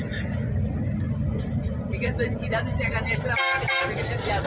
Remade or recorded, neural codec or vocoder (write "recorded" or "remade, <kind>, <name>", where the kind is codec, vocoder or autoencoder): recorded